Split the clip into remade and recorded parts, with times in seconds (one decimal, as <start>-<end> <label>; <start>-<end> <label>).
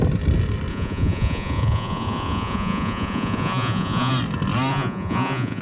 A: 0.0-0.7 recorded; 0.7-4.1 remade; 4.1-4.7 recorded; 4.7-5.6 remade